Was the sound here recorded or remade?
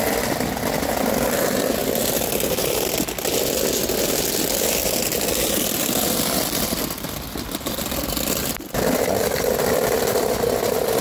recorded